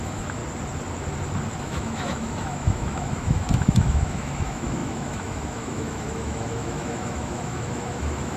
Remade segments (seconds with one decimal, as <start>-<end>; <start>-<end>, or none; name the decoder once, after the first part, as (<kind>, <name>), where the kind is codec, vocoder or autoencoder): 0.0-0.4 (autoencoder, DAC-VAE); 1.6-8.4